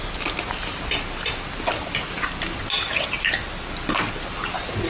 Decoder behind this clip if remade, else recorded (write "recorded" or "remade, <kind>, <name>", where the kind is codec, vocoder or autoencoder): recorded